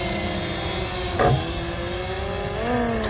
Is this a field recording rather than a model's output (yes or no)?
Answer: yes